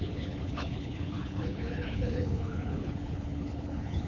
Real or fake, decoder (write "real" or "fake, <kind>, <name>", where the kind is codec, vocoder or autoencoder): fake, codec, HILCodec